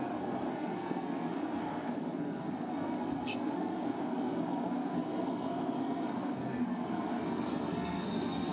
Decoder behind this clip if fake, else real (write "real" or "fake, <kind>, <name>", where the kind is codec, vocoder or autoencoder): fake, codec, SNAC